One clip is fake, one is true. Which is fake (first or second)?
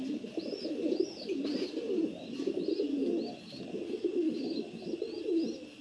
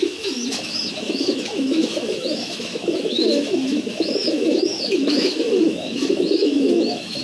second